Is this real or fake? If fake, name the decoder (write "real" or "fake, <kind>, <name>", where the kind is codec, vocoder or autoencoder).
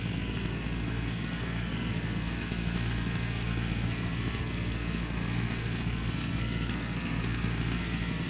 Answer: fake, codec, SNAC